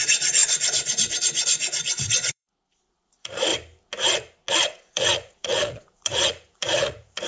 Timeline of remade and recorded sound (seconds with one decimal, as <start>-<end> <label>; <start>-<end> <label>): 0.0-3.5 remade; 3.5-4.5 recorded; 4.5-7.3 remade